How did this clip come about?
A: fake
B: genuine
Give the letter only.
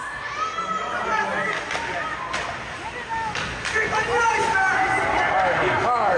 B